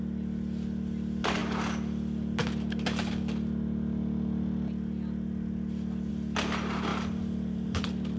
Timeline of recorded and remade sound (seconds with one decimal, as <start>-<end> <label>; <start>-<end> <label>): 0.0-6.9 recorded; 6.9-8.2 remade